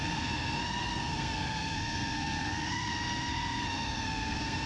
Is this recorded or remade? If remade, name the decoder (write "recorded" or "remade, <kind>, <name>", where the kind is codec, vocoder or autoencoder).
remade, codec, SNAC